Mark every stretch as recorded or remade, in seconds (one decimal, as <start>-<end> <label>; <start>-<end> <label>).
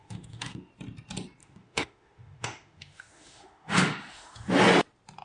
0.0-0.7 remade; 0.7-1.4 recorded; 1.4-4.5 remade; 4.5-5.2 recorded